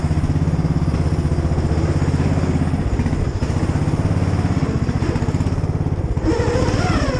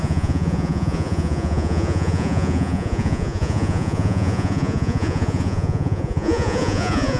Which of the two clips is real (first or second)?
first